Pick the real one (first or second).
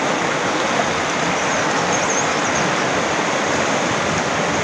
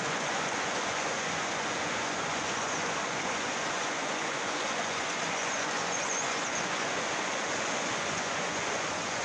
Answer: first